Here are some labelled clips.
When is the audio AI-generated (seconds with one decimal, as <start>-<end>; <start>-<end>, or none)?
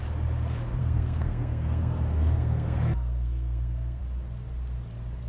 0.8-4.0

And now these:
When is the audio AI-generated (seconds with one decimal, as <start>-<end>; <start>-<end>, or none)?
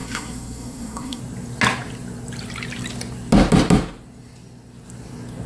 0.0-1.2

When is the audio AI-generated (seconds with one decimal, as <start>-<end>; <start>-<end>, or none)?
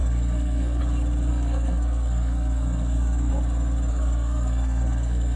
0.0-0.8; 1.3-3.3; 3.9-5.4